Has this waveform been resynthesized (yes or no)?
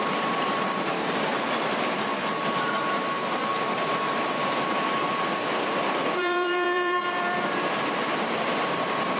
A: yes